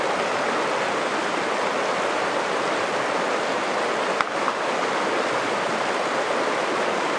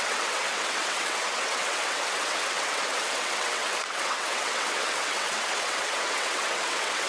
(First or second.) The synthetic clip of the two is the second